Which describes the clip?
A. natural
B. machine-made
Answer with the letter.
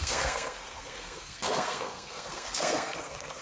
B